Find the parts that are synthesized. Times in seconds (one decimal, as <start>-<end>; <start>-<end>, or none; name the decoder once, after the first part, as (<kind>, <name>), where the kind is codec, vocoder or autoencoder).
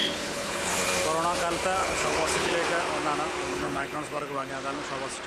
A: 0.0-0.7 (codec, HILCodec); 1.8-2.5; 3.5-4.5